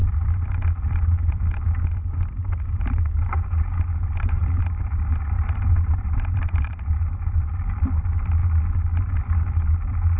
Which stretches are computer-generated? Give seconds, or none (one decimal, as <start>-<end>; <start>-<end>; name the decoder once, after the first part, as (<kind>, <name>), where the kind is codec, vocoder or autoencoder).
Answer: 0.0-0.6 (vocoder, BigVGAN v2); 2.4-7.5